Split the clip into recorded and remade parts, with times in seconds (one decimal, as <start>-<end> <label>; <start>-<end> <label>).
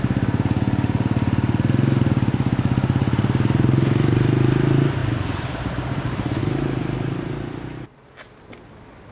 0.0-9.1 recorded